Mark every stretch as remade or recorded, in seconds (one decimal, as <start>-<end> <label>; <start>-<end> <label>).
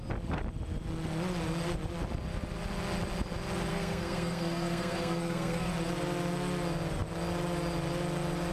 0.0-3.7 recorded; 3.7-5.7 remade; 5.7-8.5 recorded